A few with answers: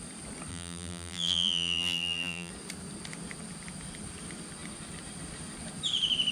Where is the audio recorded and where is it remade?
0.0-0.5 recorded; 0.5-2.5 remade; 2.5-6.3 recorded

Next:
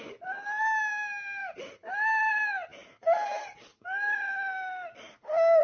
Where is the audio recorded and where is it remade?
0.0-5.6 recorded

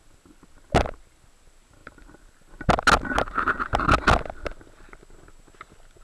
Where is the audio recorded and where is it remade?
0.0-6.0 recorded

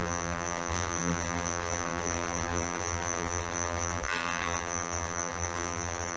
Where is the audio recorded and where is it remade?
0.0-6.2 remade

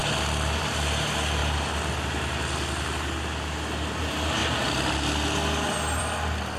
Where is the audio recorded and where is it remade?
0.0-6.6 recorded

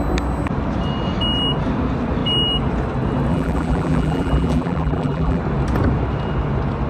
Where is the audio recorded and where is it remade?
0.0-3.3 recorded; 3.3-5.4 remade; 5.4-6.9 recorded